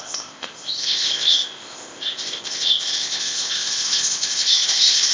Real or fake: fake